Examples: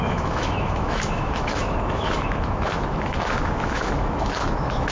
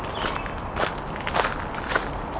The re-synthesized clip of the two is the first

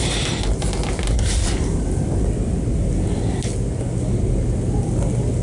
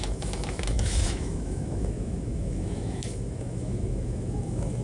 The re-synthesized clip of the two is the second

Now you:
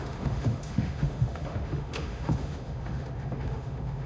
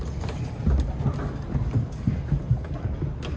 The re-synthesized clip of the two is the first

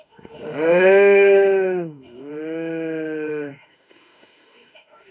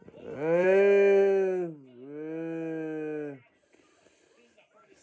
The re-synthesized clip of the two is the first